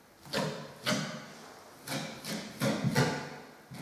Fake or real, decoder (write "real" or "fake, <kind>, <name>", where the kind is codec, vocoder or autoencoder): real